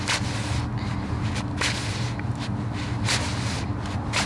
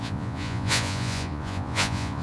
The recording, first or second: first